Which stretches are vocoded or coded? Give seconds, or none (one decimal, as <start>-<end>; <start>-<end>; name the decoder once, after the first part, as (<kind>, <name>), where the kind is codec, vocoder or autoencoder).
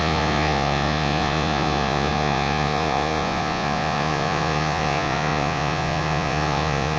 0.0-7.0 (vocoder, Vocos)